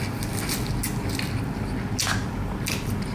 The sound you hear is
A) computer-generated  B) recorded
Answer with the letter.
B